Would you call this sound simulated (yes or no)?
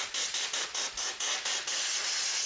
no